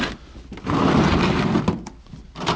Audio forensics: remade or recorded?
recorded